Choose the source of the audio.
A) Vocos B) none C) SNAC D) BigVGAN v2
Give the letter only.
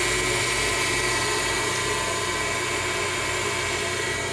B